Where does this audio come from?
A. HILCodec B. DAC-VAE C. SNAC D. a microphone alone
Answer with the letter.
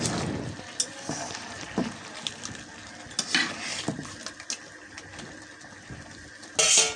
D